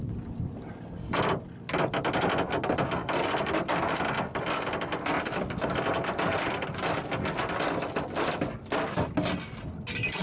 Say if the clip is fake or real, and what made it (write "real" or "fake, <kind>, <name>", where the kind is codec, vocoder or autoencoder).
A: real